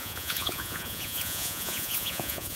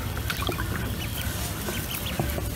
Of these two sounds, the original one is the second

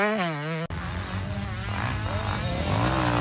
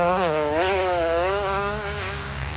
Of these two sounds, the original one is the first